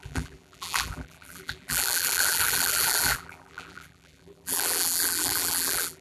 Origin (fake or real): fake